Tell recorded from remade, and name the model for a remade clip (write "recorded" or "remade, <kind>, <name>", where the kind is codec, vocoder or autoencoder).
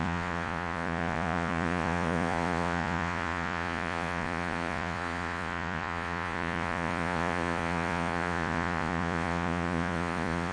remade, vocoder, Vocos